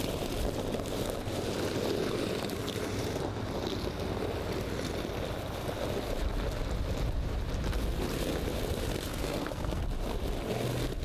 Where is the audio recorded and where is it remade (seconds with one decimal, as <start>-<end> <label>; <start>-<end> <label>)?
0.0-9.1 recorded; 9.1-9.8 remade; 9.8-11.0 recorded